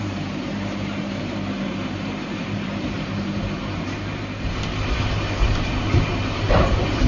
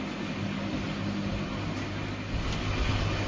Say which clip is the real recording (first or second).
second